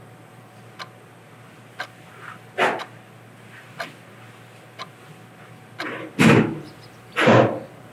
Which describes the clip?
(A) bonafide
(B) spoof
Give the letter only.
A